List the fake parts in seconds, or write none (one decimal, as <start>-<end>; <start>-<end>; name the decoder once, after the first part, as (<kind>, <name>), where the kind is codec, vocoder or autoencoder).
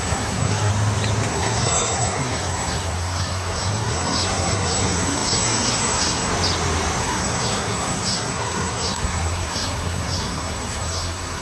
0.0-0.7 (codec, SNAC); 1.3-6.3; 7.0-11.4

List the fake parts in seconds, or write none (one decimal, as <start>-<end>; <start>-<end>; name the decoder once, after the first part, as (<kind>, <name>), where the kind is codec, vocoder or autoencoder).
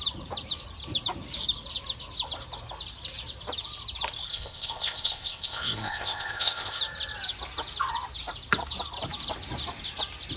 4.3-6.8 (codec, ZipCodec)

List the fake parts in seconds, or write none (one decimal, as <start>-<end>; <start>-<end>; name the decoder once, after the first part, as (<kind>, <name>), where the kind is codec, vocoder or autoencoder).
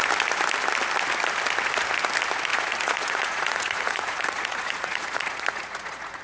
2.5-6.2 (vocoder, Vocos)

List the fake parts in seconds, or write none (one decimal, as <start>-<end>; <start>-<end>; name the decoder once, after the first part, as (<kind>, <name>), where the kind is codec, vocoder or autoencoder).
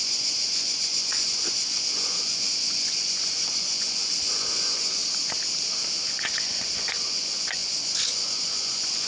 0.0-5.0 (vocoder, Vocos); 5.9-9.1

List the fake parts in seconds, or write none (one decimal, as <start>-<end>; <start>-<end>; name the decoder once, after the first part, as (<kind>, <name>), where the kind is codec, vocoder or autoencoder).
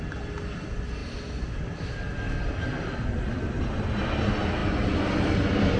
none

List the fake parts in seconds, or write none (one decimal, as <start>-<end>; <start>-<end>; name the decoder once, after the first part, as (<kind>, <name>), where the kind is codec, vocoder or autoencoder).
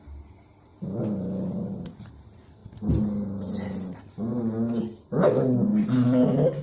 none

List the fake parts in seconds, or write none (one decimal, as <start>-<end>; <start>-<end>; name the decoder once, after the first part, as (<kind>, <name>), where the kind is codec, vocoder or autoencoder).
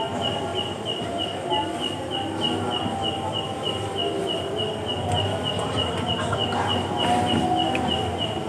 none